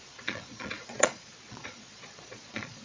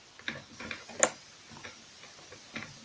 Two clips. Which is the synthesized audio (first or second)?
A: first